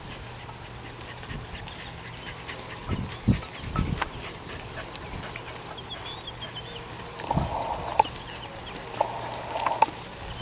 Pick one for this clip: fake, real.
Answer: real